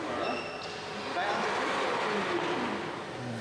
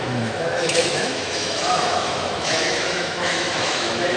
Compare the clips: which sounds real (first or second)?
first